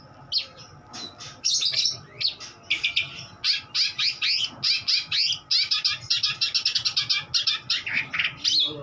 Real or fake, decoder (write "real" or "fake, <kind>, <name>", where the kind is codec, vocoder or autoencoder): real